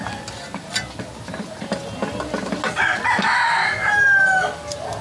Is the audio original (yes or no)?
yes